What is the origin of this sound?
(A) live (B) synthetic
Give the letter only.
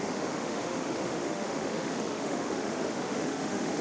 B